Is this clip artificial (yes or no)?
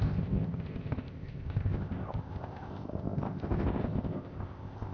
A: yes